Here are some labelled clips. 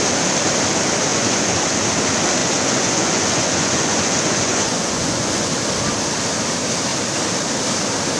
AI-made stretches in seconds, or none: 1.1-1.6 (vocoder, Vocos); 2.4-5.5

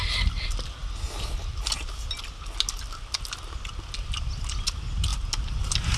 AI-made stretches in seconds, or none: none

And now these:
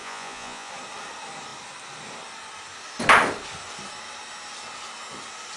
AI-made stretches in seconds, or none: 0.0-0.7 (vocoder, Vocos)

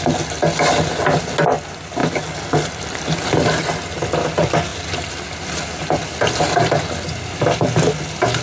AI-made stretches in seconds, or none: none

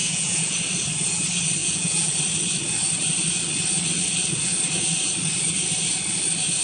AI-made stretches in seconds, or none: 0.0-0.6 (vocoder, Vocos); 1.6-2.1